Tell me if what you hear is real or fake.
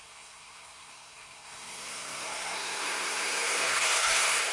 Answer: fake